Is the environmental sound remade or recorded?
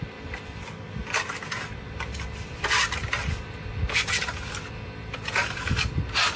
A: recorded